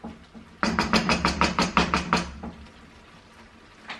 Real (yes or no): yes